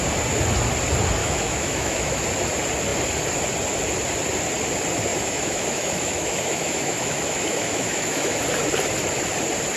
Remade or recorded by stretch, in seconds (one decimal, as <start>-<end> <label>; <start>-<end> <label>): 0.0-1.2 recorded; 1.2-2.2 remade; 2.2-5.1 recorded; 5.1-8.4 remade; 8.4-9.8 recorded